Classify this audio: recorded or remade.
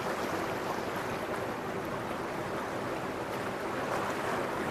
recorded